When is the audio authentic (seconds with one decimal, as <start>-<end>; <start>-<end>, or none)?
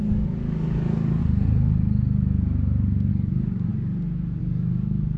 1.2-3.1; 3.7-4.4